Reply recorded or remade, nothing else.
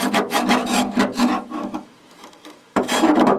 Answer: remade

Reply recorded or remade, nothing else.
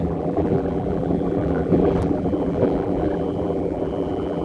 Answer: remade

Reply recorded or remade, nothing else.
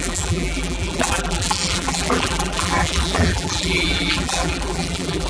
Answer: remade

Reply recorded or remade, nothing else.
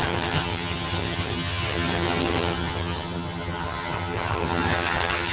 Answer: remade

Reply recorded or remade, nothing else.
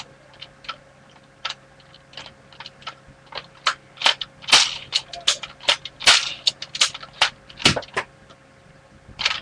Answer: recorded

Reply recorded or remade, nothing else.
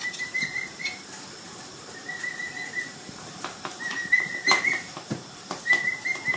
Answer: remade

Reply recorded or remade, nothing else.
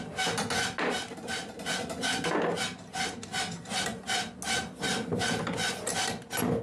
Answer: recorded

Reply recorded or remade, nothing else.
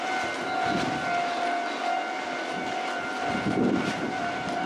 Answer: recorded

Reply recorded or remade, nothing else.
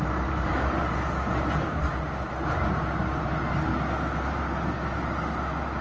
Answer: recorded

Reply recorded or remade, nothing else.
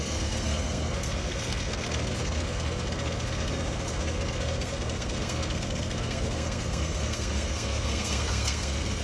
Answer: remade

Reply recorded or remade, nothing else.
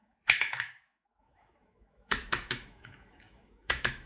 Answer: remade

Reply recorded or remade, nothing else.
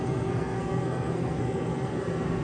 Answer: remade